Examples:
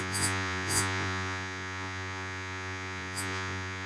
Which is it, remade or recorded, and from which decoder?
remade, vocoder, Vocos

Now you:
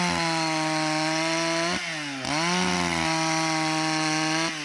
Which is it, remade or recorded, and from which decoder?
recorded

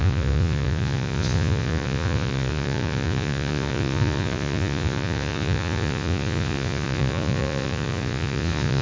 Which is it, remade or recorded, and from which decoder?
remade, vocoder, Vocos